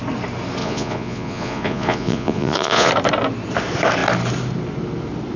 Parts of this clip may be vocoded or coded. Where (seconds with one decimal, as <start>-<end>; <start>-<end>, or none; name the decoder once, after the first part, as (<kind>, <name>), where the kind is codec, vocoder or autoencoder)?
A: 0.6-2.9 (vocoder, Vocos)